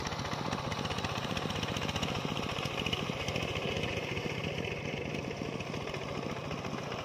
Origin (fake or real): real